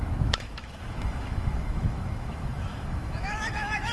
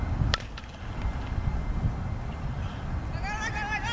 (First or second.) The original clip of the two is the second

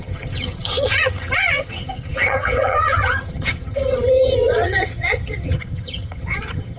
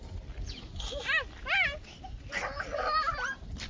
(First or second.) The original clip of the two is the second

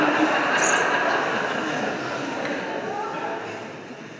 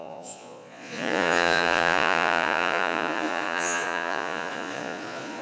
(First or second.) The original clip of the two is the first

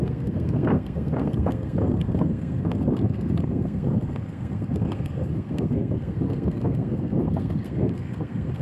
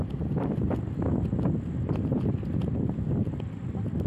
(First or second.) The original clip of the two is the second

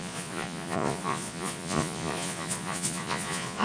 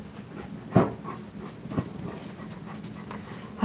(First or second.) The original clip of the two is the second